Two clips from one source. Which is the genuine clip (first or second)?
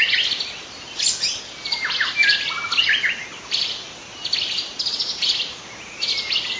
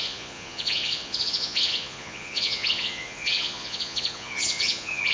first